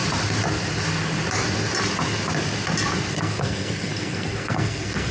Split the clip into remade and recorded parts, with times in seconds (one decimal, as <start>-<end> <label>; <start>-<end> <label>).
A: 0.0-3.1 recorded; 3.1-5.1 remade